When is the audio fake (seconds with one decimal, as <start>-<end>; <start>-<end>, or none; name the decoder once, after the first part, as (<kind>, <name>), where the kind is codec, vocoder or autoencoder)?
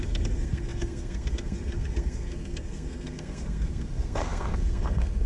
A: 0.0-5.3 (codec, SNAC)